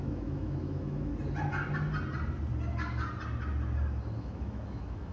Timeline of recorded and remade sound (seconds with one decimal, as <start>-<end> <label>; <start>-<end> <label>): 0.0-1.1 remade; 1.1-4.2 recorded; 4.2-5.1 remade